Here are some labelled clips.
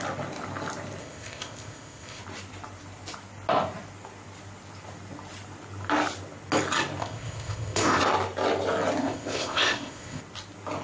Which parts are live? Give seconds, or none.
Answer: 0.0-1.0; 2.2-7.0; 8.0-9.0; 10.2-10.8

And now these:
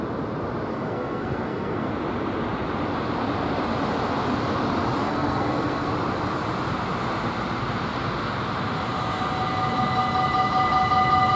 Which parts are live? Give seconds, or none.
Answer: 0.0-0.7; 1.9-5.0; 5.9-11.4